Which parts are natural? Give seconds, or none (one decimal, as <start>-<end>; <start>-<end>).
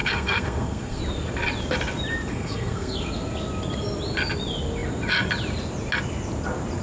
1.0-2.3; 3.1-6.8